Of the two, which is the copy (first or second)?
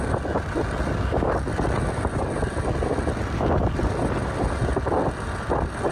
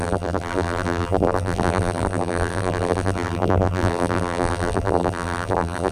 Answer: second